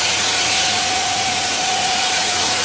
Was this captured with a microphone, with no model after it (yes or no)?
no